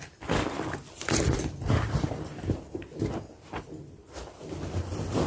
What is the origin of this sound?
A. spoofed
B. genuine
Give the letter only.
B